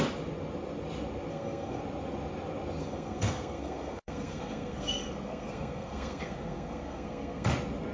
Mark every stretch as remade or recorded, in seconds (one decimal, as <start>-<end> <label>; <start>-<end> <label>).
0.0-1.3 recorded; 1.3-1.8 remade; 1.8-2.8 recorded; 2.8-7.5 remade; 7.5-7.9 recorded